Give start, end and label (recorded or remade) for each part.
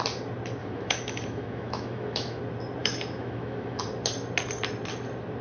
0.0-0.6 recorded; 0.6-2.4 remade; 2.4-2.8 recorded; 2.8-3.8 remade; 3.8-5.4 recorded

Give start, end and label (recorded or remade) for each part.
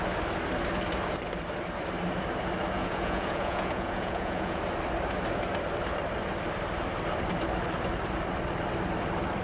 0.0-2.8 recorded; 2.8-4.6 remade; 4.6-9.4 recorded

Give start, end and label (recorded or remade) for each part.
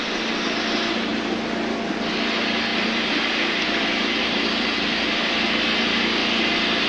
0.0-2.7 recorded; 2.7-5.8 remade; 5.8-6.2 recorded; 6.2-6.9 remade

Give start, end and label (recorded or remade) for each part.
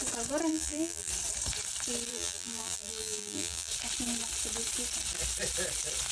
0.0-0.5 recorded; 0.5-1.1 remade; 1.1-2.1 recorded; 2.1-3.7 remade; 3.7-6.1 recorded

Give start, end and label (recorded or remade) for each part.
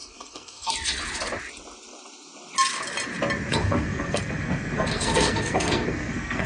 0.0-0.7 remade; 0.7-3.5 recorded; 3.5-6.5 remade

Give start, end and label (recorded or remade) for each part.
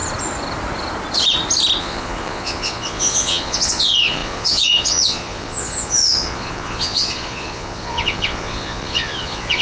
0.0-1.8 recorded; 1.8-9.6 remade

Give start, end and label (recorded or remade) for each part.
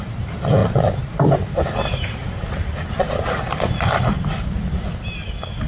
0.0-5.7 recorded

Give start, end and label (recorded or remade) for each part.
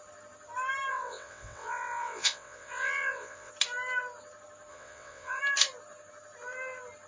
0.0-0.9 recorded; 0.9-3.5 remade; 3.5-4.7 recorded; 4.7-5.4 remade; 5.4-7.1 recorded